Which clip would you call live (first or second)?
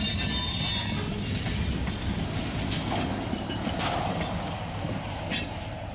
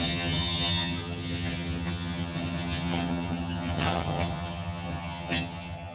first